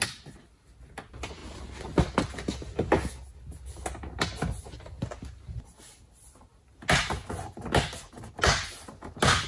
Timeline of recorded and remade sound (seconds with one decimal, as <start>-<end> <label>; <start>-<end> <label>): 0.0-9.5 recorded